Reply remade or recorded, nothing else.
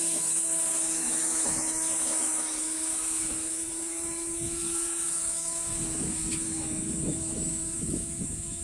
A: remade